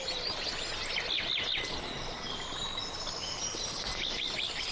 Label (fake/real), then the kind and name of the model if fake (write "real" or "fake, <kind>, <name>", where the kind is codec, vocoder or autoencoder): real